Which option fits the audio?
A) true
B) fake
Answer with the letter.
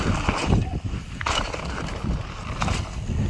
A